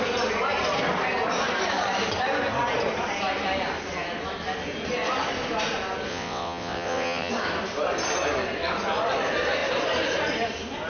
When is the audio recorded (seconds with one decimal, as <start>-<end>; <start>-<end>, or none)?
0.0-6.1; 7.3-10.9